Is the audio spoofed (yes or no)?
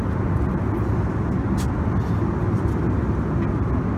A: no